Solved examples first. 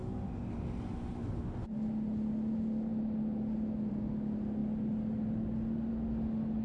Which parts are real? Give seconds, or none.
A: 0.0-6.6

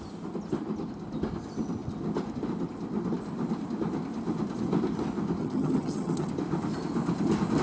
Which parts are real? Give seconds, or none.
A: 0.0-5.4; 6.3-7.6

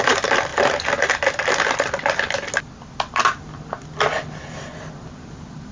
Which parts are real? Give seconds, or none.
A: 0.0-5.7

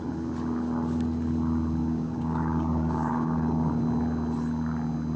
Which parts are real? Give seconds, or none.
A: 0.0-1.8; 3.8-5.2